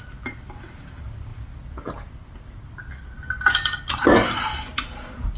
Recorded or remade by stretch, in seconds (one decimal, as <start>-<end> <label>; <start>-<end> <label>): 0.0-5.4 recorded